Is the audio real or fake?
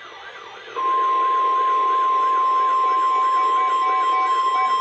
real